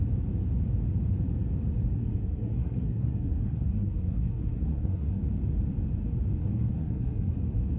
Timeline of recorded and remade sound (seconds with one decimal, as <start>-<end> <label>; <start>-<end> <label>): 0.0-1.9 recorded; 1.9-5.2 remade; 5.2-6.4 recorded; 6.4-7.3 remade; 7.3-7.8 recorded